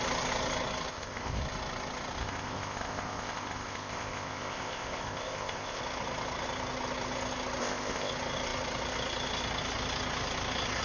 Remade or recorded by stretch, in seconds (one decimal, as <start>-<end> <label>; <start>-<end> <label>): 0.0-0.9 recorded; 0.9-1.4 remade; 1.4-2.2 recorded; 2.2-5.8 remade; 5.8-7.6 recorded; 7.6-8.1 remade; 8.1-10.8 recorded